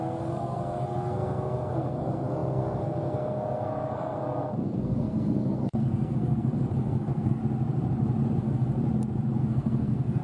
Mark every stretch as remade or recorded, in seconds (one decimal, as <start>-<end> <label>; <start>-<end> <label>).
0.0-7.4 remade; 7.4-8.4 recorded; 8.4-8.8 remade; 8.8-9.4 recorded; 9.4-10.2 remade